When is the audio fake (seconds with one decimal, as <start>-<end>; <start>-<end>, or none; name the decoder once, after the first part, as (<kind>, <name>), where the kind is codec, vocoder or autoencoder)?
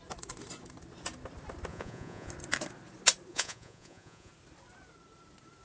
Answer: 1.7-2.3 (vocoder, Vocos); 3.3-4.3